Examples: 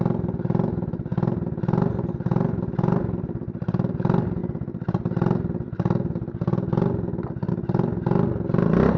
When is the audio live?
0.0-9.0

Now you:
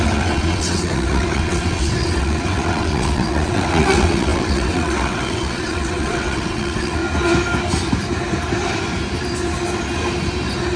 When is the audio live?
7.0-10.8